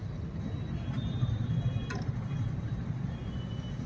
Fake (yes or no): no